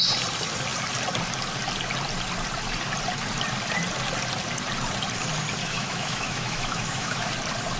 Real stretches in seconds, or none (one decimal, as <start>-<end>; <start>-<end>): 0.0-5.6; 7.3-7.8

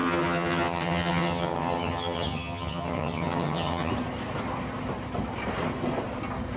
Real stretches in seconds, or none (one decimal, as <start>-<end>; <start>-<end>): 3.9-6.6

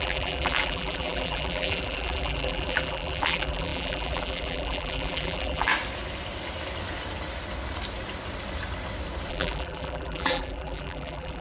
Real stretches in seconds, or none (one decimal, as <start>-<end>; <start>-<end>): 5.7-9.3